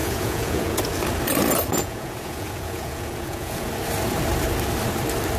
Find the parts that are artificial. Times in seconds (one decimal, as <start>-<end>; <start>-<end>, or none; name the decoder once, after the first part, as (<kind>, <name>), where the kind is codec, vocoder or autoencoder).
0.0-0.8 (vocoder, Vocos); 1.7-3.7